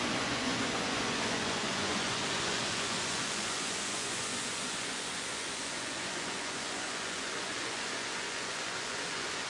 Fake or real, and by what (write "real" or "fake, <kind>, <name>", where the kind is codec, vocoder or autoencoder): fake, vocoder, Vocos